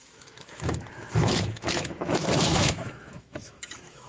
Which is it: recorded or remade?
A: remade